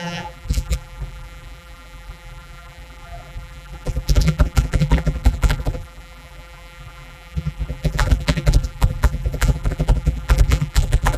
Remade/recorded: remade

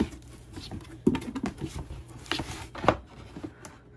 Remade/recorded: recorded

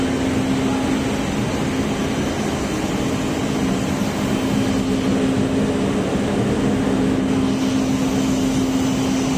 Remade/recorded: recorded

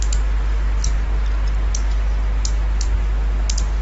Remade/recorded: recorded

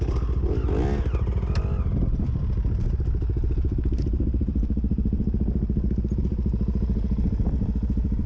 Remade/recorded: recorded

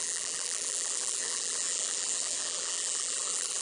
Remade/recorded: remade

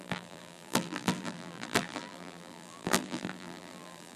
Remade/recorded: remade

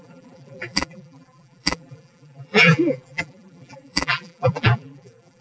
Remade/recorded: remade